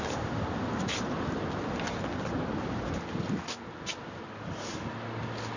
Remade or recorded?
recorded